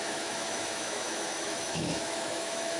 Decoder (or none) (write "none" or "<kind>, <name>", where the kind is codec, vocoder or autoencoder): autoencoder, DAC-VAE